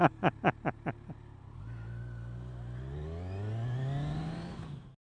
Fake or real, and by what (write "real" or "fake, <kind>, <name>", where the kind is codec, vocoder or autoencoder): real